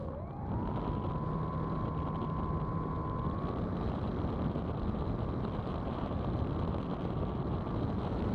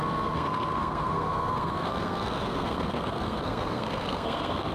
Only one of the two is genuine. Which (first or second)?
first